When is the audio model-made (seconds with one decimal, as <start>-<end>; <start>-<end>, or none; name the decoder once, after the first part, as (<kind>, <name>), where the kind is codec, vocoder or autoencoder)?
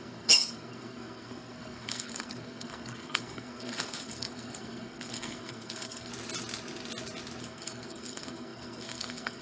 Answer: 0.0-6.1 (codec, SNAC); 7.4-9.4